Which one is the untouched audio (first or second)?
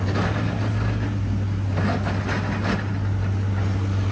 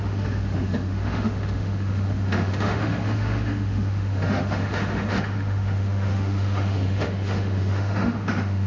first